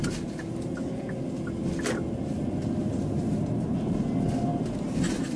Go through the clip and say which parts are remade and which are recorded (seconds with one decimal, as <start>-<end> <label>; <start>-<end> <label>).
0.0-5.4 recorded